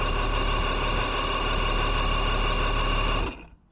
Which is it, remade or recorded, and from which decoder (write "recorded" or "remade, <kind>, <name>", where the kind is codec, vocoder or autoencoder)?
recorded